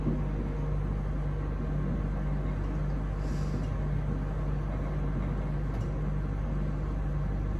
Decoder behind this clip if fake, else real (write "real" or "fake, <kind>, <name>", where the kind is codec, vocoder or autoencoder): real